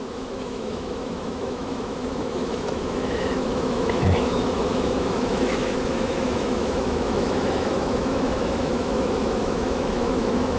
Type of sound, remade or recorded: remade